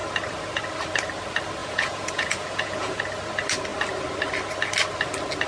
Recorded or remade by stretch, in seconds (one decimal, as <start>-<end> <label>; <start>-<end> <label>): 0.0-1.6 recorded; 1.6-3.0 remade; 3.0-5.5 recorded